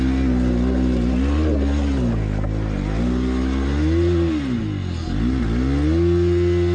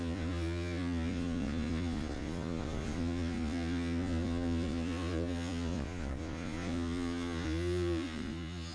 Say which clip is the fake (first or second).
second